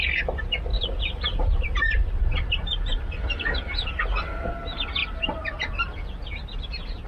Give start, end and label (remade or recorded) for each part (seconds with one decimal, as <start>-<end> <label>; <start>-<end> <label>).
0.0-0.7 recorded; 0.7-4.5 remade; 4.5-5.0 recorded; 5.0-7.1 remade